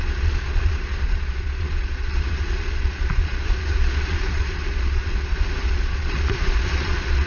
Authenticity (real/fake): fake